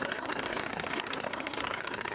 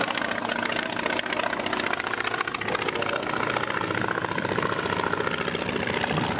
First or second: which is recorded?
second